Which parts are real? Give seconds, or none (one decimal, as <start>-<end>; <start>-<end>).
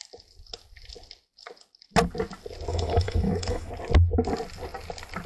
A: 0.0-2.7; 3.7-5.3